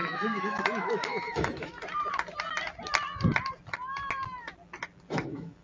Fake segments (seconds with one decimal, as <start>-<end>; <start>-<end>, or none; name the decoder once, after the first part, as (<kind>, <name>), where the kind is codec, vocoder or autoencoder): 0.0-1.7 (autoencoder, DAC-VAE); 5.1-5.6